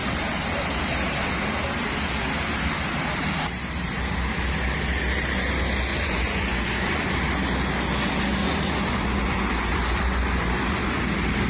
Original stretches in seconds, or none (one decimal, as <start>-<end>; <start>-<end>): 0.0-5.9; 7.1-8.4; 11.0-11.5